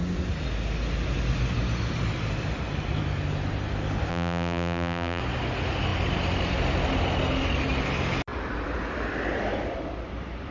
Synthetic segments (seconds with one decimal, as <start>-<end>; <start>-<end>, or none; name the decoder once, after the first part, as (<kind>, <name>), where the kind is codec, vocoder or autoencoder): 4.1-5.2 (vocoder, BigVGAN v2)